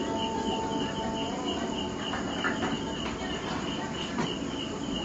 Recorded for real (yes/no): yes